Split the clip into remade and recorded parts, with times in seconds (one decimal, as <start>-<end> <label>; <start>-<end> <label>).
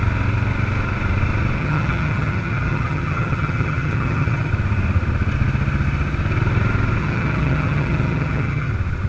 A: 0.0-1.6 recorded; 1.6-4.5 remade; 4.5-7.0 recorded; 7.0-8.7 remade; 8.7-9.1 recorded